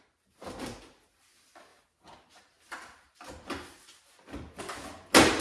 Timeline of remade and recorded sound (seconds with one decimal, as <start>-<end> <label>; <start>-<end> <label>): 0.0-5.4 recorded